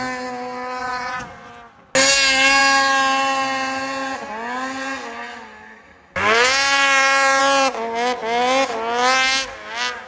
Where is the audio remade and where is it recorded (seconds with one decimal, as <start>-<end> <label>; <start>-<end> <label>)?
0.0-0.8 recorded; 0.8-1.5 remade; 1.5-10.1 recorded